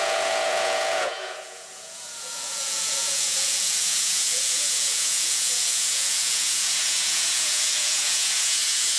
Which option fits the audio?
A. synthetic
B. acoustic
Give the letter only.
A